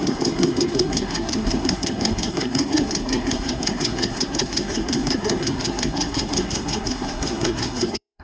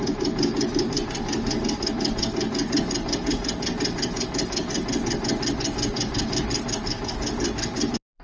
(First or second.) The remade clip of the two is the first